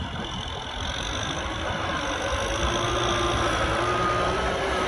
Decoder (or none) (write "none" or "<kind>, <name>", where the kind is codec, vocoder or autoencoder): none